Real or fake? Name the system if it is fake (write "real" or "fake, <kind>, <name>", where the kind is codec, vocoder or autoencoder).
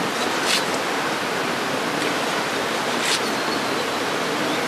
real